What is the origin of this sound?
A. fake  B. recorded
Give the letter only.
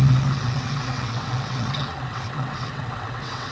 A